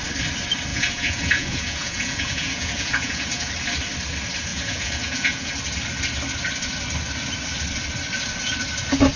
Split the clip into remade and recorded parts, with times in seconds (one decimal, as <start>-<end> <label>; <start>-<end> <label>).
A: 0.0-0.7 recorded; 0.7-3.5 remade; 3.5-4.5 recorded; 4.5-5.5 remade; 5.5-9.2 recorded